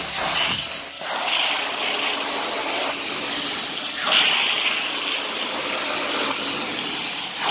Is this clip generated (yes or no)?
no